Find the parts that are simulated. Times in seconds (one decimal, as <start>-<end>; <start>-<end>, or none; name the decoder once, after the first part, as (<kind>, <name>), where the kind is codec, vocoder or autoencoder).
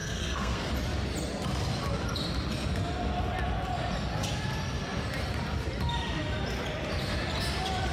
0.0-0.7 (codec, SNAC)